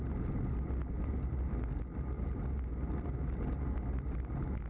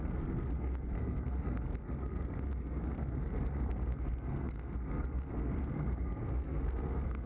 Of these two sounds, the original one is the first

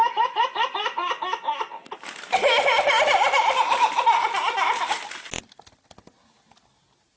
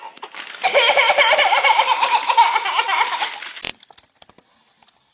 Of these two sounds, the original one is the first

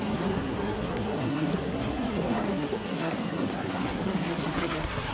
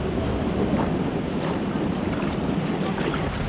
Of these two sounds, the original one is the second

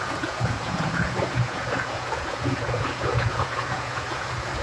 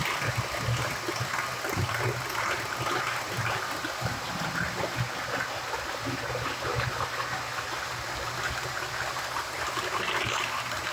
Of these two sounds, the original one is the second